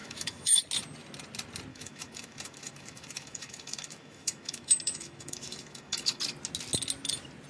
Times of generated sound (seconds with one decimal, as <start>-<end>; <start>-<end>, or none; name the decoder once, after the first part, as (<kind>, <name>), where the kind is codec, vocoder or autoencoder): 0.0-0.6 (autoencoder, DAC-VAE); 1.7-6.2